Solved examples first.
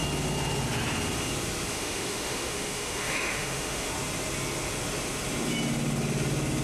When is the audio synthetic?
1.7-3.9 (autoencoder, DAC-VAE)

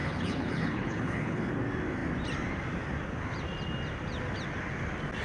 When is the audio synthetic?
0.0-1.5 (codec, HILCodec)

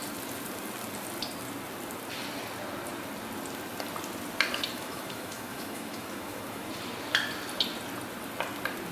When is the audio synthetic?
4.7-6.7 (autoencoder, DAC-VAE)

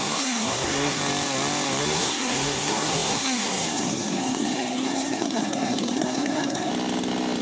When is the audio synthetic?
0.0-1.0 (codec, SNAC); 1.8-6.7

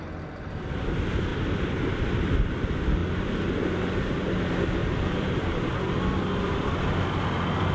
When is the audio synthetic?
4.8-5.7 (vocoder, BigVGAN v2)

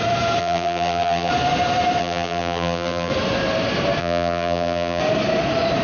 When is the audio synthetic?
0.4-1.3 (vocoder, BigVGAN v2); 2.0-3.1; 4.0-5.0